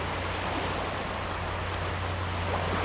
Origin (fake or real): real